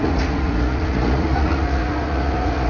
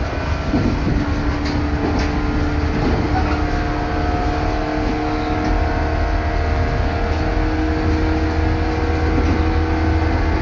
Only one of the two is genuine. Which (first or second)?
second